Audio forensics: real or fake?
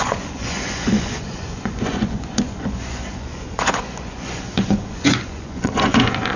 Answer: fake